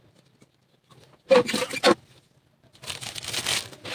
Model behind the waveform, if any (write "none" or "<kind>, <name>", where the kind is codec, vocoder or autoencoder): none